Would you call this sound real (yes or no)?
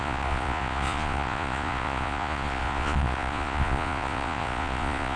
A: no